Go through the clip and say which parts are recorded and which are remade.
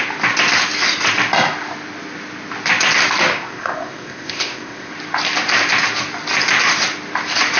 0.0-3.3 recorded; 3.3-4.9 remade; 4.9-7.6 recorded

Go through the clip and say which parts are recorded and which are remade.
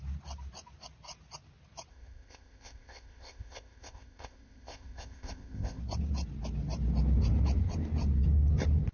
0.0-1.9 recorded; 1.9-5.8 remade; 5.8-8.9 recorded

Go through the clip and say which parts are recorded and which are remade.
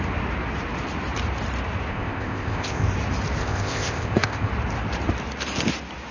0.0-1.9 recorded; 1.9-2.9 remade; 2.9-3.4 recorded; 3.4-4.5 remade; 4.5-6.1 recorded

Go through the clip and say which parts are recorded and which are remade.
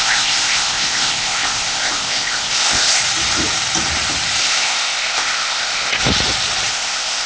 0.0-3.0 remade; 3.0-4.4 recorded; 4.4-6.0 remade; 6.0-6.7 recorded; 6.7-7.3 remade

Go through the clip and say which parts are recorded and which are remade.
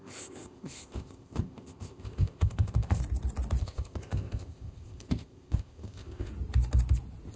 0.0-3.0 remade; 3.0-3.6 recorded; 3.6-6.3 remade; 6.3-7.4 recorded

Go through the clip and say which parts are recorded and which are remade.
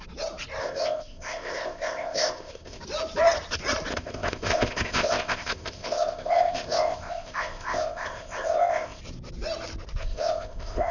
0.0-0.6 recorded; 0.6-2.8 remade; 2.8-3.9 recorded; 3.9-9.0 remade; 9.0-10.0 recorded; 10.0-10.9 remade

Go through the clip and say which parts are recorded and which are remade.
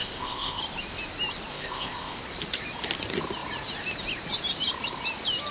0.0-0.6 remade; 0.6-1.5 recorded; 1.5-2.2 remade; 2.2-5.5 recorded